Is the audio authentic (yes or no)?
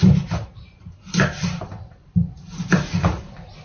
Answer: yes